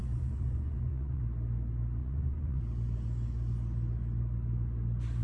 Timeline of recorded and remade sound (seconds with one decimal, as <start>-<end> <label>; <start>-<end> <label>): 0.0-1.2 remade; 1.2-2.0 recorded; 2.0-2.6 remade; 2.6-5.2 recorded